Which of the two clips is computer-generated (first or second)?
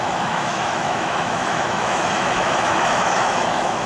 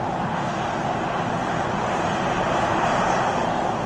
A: first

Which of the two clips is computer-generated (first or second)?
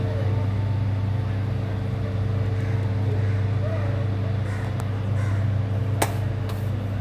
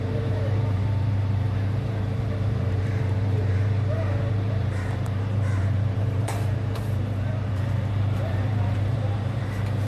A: second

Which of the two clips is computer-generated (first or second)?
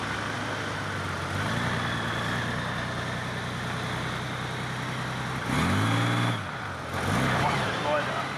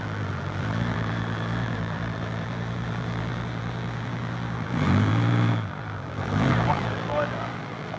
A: second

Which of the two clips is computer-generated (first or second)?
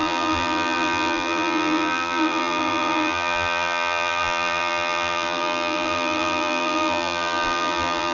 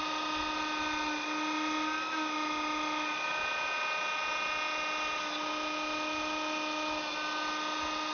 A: first